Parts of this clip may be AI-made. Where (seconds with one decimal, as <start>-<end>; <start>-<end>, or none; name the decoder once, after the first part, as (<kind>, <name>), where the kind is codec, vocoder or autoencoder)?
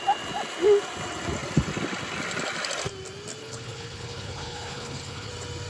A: 3.4-5.3 (codec, HILCodec)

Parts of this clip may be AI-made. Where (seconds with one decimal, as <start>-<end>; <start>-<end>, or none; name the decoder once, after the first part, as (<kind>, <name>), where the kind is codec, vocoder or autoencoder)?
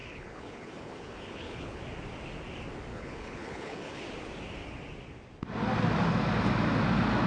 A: 0.0-1.8 (codec, HILCodec); 2.9-4.0